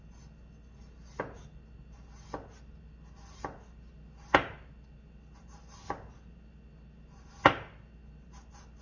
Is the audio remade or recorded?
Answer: recorded